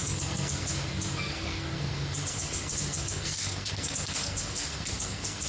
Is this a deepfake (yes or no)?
yes